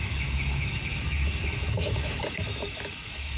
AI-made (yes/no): yes